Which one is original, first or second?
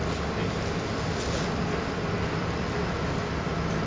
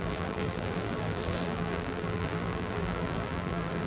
first